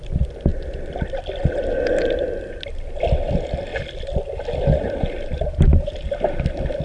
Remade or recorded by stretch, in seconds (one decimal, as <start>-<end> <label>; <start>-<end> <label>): 0.0-5.3 recorded; 5.3-6.0 remade; 6.0-6.8 recorded